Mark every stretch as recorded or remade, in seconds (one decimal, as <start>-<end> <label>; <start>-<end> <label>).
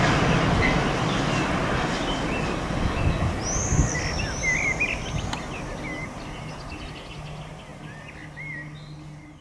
0.0-9.4 recorded